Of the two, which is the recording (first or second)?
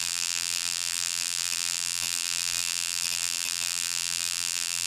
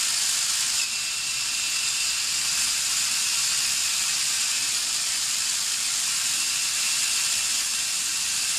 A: second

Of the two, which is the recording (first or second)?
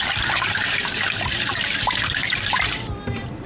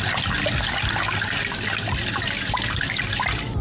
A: second